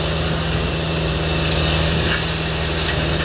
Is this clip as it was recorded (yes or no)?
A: yes